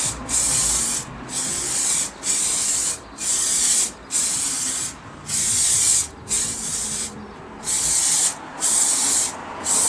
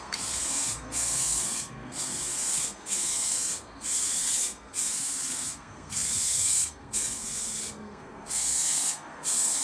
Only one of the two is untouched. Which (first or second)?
first